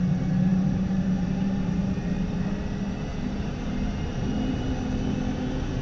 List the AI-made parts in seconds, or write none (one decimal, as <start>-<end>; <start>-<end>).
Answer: 0.5-2.4; 3.1-4.8